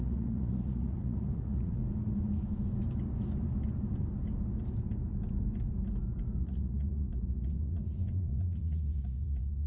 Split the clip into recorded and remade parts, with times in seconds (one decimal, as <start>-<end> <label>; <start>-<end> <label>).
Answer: 0.0-1.8 remade; 1.8-6.4 recorded; 6.4-9.7 remade